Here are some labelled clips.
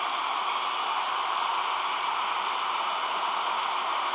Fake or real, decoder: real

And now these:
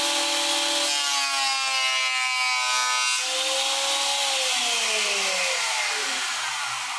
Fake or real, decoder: real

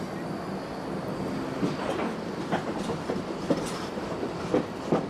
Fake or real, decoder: real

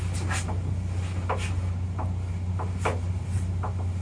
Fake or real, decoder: real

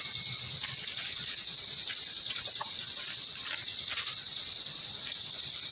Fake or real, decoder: real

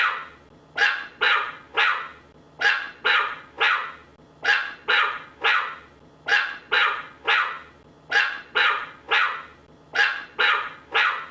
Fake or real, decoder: real